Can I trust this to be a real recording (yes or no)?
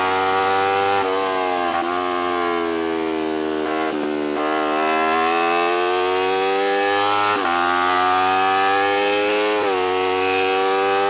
yes